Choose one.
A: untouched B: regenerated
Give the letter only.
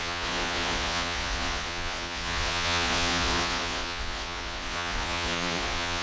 B